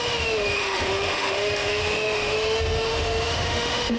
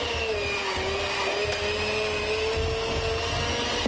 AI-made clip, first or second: first